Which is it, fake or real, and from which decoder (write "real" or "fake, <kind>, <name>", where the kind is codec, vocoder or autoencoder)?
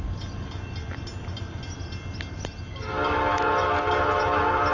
real